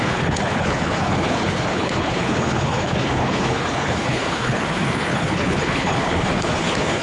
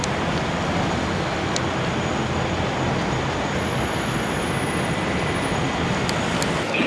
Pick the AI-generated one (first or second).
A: first